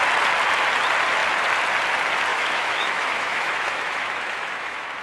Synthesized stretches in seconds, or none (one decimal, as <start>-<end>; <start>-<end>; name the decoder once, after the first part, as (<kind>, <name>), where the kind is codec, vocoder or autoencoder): 2.3-5.0 (autoencoder, DAC-VAE)

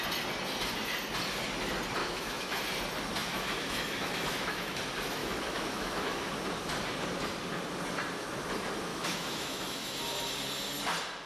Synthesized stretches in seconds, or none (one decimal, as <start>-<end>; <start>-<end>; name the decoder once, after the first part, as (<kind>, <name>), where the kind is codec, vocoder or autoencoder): 2.0-2.6 (autoencoder, DAC-VAE); 3.2-4.8; 5.2-6.3; 8.9-10.0